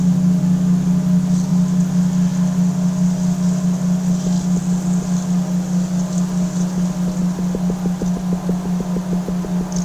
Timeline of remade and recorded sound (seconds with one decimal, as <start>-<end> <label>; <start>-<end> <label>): 0.0-9.8 recorded